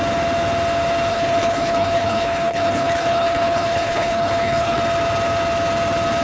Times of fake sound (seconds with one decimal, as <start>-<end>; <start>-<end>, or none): 1.1-4.8